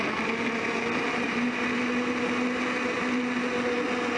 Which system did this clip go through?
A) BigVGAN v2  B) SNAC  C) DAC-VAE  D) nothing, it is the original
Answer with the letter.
D